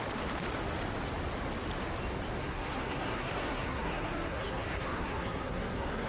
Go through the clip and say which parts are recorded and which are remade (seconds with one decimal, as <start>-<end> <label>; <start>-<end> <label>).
0.0-2.4 recorded; 2.4-6.1 remade